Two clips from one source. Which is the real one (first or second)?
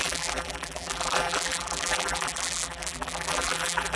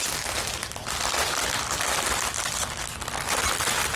second